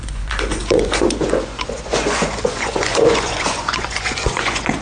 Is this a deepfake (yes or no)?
yes